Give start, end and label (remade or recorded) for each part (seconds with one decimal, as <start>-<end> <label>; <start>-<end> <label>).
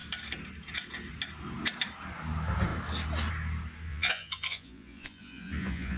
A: 0.0-3.9 recorded; 3.9-6.0 remade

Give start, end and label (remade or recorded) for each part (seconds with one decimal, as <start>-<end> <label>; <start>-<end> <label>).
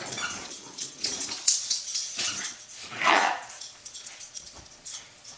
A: 0.0-5.4 remade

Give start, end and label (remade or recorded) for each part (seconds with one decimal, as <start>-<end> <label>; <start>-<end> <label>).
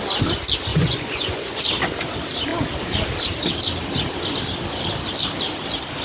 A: 0.0-0.7 recorded; 0.7-1.6 remade; 1.6-6.0 recorded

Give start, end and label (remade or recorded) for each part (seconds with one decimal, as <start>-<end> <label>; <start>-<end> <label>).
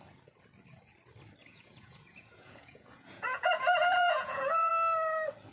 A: 0.0-1.4 recorded; 1.4-4.7 remade; 4.7-5.5 recorded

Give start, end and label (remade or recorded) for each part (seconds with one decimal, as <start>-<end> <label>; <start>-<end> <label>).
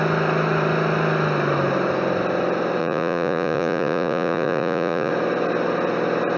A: 0.0-2.8 recorded; 2.8-5.1 remade; 5.1-6.4 recorded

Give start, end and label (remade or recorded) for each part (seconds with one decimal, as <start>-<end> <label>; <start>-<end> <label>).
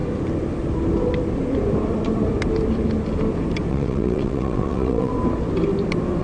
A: 0.0-3.7 recorded; 3.7-5.1 remade; 5.1-6.2 recorded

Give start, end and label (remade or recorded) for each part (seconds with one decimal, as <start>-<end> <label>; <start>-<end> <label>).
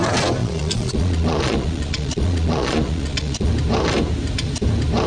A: 0.0-0.4 recorded; 0.4-3.5 remade; 3.5-5.1 recorded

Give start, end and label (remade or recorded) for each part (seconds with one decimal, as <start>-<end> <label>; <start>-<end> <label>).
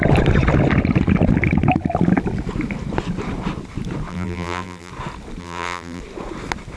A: 0.0-4.1 recorded; 4.1-4.9 remade; 4.9-5.4 recorded; 5.4-6.0 remade; 6.0-6.8 recorded